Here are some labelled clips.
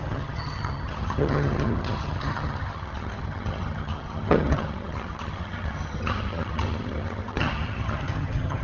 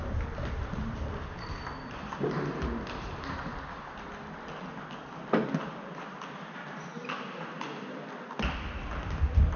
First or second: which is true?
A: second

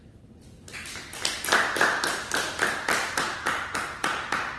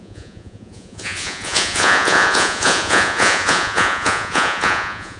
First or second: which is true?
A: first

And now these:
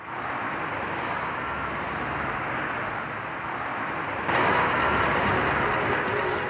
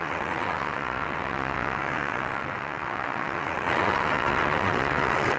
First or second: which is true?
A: first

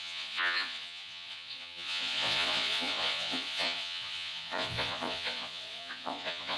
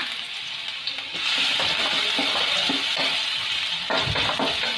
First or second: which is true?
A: second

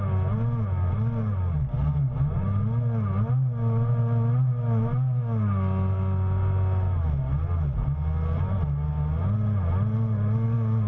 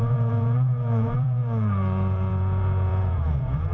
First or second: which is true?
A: first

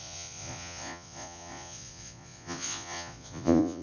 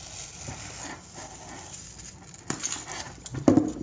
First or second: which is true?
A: second